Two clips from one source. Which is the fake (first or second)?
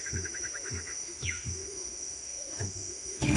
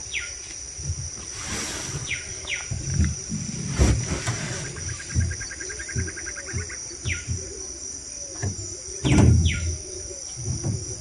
first